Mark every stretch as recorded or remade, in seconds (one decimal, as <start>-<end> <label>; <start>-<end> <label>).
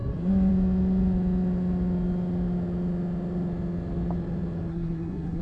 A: 0.0-4.7 recorded; 4.7-5.4 remade